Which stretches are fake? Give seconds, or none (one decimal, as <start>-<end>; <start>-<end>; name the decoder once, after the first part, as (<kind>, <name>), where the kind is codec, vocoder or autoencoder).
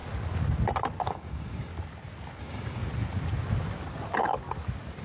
1.1-1.7 (codec, DAC); 2.4-2.8